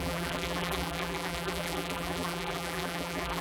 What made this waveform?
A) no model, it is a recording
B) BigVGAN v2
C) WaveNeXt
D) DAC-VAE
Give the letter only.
B